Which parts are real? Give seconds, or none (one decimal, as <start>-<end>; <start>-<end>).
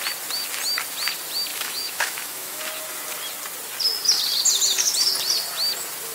0.0-1.5; 2.6-6.1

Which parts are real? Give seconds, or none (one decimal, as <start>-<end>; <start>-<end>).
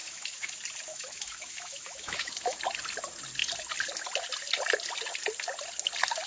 0.5-0.9; 2.6-6.3